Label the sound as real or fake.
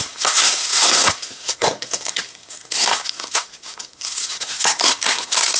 fake